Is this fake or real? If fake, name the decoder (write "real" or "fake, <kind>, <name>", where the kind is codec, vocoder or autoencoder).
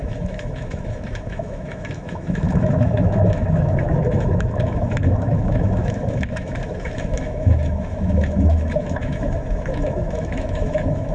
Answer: fake, autoencoder, DAC-VAE